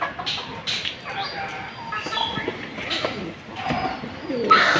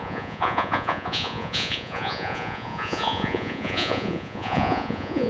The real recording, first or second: first